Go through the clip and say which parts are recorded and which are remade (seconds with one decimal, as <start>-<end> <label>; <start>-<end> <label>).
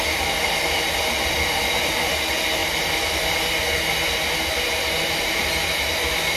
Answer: 0.0-6.4 recorded